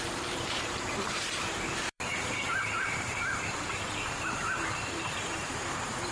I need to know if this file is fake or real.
fake